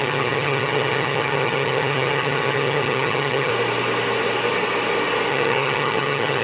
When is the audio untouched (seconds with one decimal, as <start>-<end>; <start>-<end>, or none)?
3.5-5.3